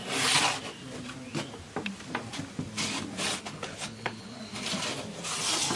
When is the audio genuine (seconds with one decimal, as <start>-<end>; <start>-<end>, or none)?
0.0-3.3; 4.4-5.8